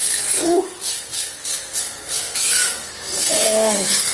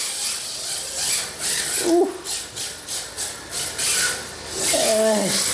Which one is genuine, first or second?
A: second